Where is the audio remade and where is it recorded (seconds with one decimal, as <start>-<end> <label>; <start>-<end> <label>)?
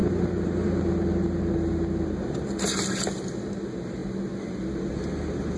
0.0-5.6 recorded